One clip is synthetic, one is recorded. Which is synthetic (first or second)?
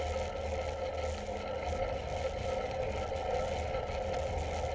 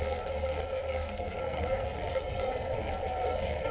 second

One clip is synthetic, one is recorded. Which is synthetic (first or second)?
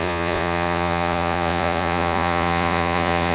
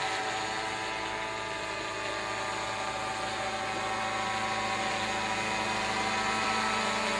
first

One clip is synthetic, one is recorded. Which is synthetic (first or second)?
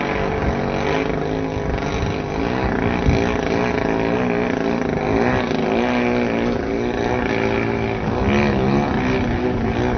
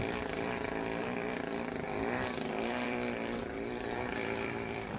second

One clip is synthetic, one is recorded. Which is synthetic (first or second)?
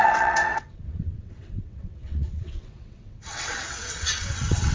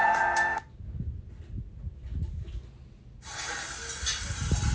first